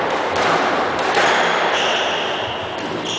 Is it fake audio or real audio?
real